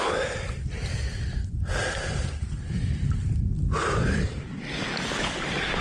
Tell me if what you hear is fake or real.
real